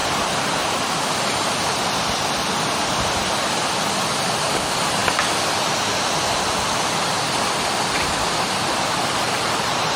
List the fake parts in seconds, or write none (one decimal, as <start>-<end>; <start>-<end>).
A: none